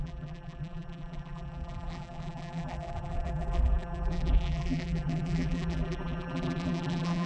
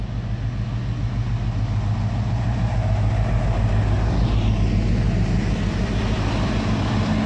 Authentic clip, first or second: second